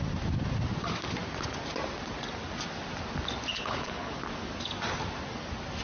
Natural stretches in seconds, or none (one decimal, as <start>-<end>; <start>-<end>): 0.0-3.5; 4.1-5.8